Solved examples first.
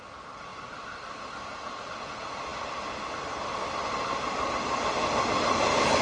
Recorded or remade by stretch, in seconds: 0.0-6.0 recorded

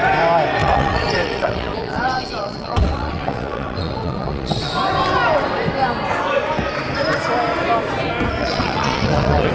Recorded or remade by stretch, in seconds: 0.0-0.6 recorded; 0.6-4.7 remade; 4.7-8.4 recorded; 8.4-9.5 remade

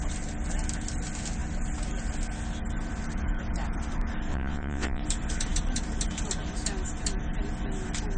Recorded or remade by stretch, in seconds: 0.0-4.3 recorded; 4.3-5.0 remade; 5.0-8.2 recorded

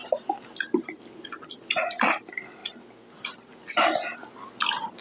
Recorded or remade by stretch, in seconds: 0.0-5.0 recorded

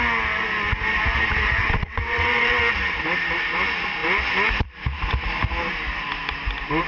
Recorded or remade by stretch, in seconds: 0.0-1.6 recorded; 1.6-2.6 remade; 2.6-6.9 recorded

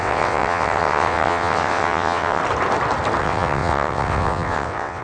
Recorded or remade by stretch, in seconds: 0.0-2.4 remade; 2.4-3.2 recorded; 3.2-5.0 remade

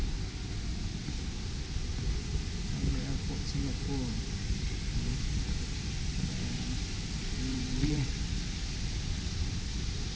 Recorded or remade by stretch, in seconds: 0.0-7.5 recorded; 7.5-8.2 remade; 8.2-10.2 recorded

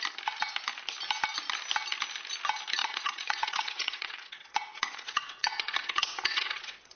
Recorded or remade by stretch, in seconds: 0.0-2.8 recorded; 2.8-7.0 remade